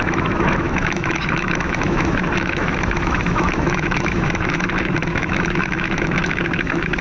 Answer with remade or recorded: remade